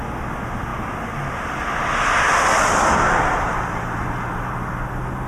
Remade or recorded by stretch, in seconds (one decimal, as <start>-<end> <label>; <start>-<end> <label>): 0.0-5.3 recorded